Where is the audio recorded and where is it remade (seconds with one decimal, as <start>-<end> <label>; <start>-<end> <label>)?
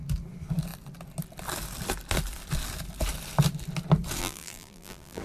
0.0-4.2 recorded; 4.2-5.2 remade